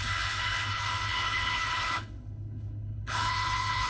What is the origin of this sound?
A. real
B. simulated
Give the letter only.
B